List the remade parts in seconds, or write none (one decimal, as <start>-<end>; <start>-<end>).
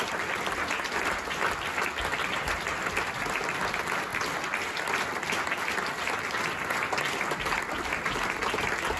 2.1-2.7